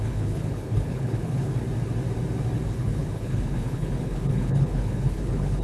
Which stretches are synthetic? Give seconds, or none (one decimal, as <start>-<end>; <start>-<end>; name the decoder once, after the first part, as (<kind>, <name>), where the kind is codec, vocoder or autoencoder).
0.0-1.5 (codec, HILCodec); 2.7-5.6